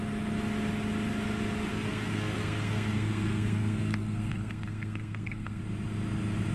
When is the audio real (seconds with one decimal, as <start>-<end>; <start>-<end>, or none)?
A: 0.0-1.7; 5.6-6.5